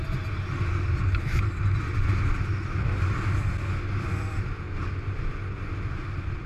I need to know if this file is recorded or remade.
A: recorded